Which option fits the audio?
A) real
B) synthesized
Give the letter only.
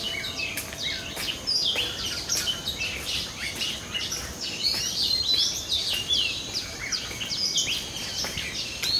A